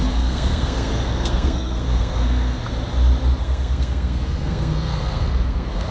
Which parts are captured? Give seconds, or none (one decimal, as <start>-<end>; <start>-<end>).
2.6-3.4